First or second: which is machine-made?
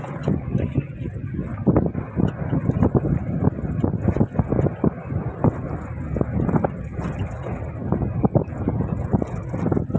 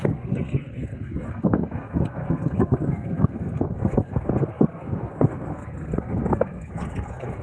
second